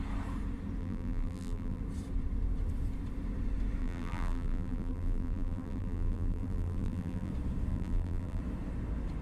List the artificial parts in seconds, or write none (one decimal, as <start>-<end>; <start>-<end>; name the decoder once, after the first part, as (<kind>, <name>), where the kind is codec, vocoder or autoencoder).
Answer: 0.8-1.8 (vocoder, BigVGAN v2); 3.8-7.3; 7.7-8.4